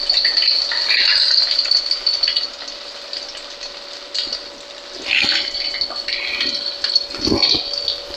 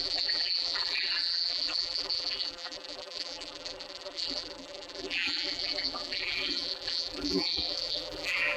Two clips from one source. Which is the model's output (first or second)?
second